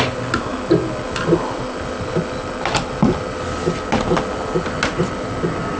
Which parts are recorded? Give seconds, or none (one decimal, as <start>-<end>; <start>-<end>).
0.0-5.8